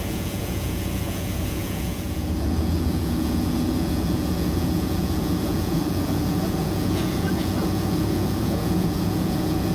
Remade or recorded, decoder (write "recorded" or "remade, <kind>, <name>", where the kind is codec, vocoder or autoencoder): remade, vocoder, Vocos